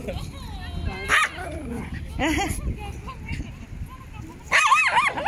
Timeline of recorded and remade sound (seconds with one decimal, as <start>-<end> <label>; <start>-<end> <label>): 0.0-5.3 recorded